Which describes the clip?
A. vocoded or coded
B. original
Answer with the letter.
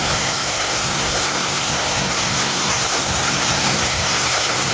A